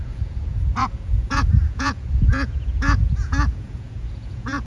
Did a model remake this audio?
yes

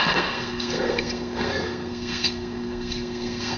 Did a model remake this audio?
yes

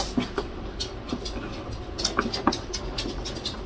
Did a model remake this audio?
no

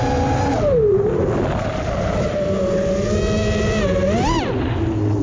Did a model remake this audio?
no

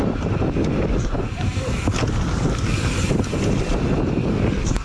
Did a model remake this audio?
no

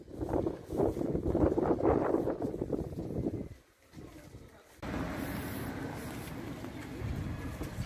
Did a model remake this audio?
no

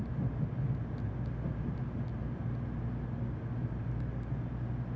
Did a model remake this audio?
no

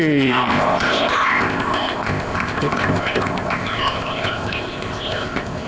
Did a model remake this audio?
yes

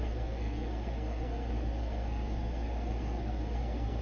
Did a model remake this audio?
yes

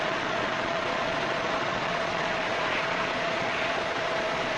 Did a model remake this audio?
yes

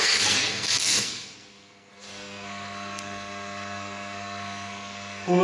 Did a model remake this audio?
yes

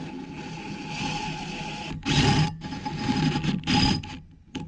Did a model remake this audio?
no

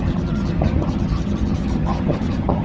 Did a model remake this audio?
yes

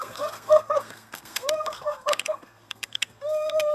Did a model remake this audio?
yes